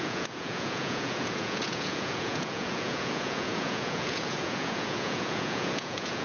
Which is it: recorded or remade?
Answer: remade